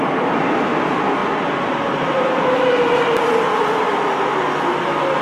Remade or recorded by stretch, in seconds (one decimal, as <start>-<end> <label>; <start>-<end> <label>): 0.0-5.2 recorded